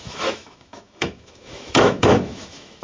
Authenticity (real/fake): fake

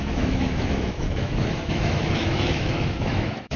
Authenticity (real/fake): fake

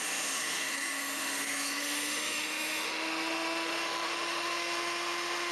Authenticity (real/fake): fake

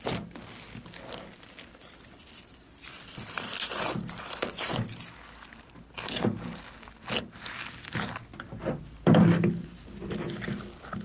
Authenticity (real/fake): real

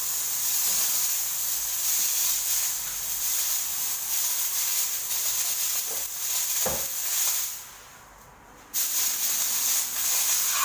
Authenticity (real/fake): real